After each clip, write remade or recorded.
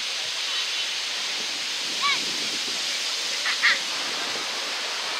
recorded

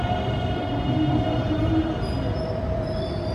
recorded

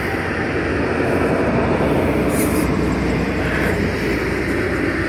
recorded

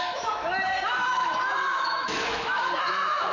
remade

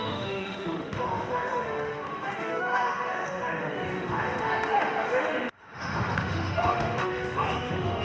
remade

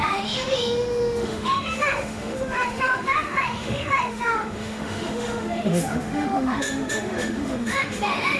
remade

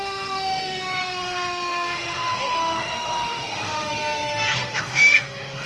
remade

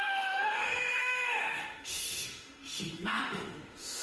remade